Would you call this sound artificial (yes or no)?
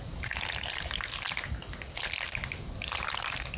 no